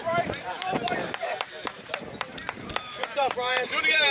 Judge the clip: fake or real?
fake